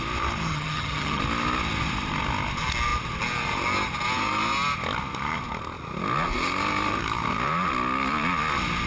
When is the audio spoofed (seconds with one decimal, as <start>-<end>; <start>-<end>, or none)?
0.5-1.2